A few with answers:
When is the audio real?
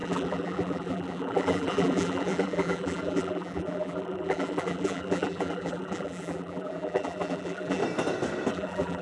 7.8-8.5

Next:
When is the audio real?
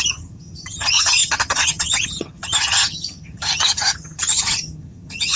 none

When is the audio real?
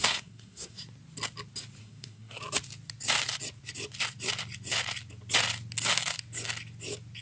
0.8-1.8; 2.4-7.2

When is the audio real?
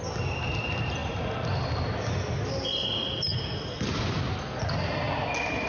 0.0-5.7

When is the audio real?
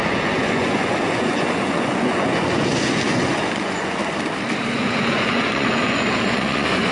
4.0-4.7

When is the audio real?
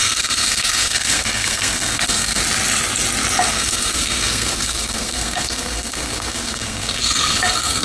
2.4-3.5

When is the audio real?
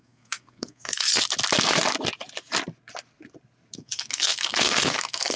1.1-3.7